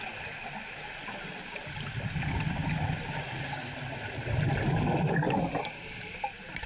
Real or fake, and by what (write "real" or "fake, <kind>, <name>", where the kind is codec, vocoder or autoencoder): real